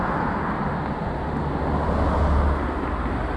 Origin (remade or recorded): recorded